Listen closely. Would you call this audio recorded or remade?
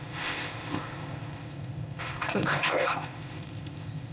remade